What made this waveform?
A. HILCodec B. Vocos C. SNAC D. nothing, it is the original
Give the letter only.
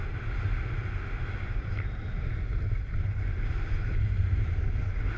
D